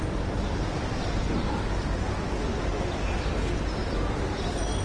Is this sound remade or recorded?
recorded